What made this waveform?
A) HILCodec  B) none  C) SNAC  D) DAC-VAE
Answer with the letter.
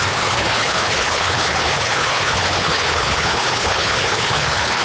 A